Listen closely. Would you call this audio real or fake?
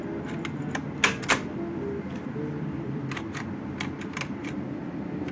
real